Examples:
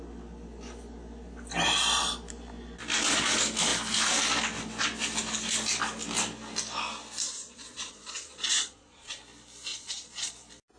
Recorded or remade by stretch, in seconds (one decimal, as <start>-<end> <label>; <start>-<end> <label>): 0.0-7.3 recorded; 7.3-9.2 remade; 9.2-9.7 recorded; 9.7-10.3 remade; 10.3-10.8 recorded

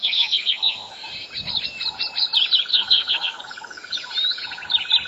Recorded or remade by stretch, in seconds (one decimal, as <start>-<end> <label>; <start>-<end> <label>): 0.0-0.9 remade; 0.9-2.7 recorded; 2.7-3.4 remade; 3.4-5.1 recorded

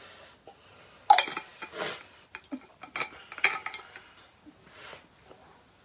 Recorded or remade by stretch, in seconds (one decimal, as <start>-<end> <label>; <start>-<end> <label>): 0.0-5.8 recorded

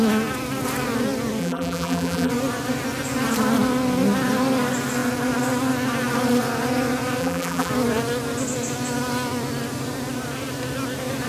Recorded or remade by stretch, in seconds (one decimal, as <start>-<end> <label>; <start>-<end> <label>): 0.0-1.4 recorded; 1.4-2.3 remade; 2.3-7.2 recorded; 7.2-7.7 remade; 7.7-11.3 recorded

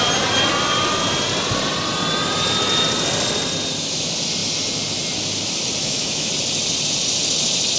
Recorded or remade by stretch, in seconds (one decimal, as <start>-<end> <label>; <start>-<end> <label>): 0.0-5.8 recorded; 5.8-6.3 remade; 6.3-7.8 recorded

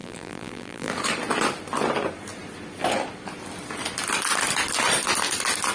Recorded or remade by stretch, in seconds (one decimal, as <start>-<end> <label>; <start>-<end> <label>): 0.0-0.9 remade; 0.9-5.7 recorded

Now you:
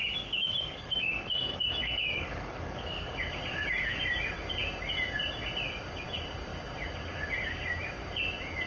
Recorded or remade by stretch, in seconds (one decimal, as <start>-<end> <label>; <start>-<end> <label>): 0.0-3.2 remade; 3.2-8.7 recorded

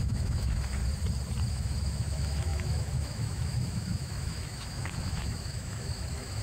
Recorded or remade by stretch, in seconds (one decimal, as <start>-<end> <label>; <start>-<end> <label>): 0.0-0.8 remade; 0.8-1.5 recorded; 1.5-6.4 remade